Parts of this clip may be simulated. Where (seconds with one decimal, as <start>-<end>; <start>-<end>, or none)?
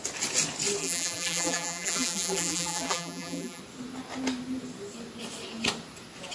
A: 0.8-3.6